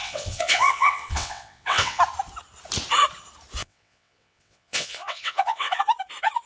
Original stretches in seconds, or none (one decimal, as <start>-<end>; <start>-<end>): 2.0-3.6; 5.8-6.5